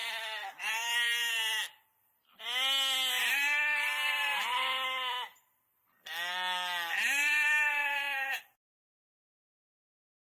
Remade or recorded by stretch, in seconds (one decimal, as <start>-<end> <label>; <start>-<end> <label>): 0.0-7.7 recorded; 7.7-8.4 remade; 8.4-10.2 recorded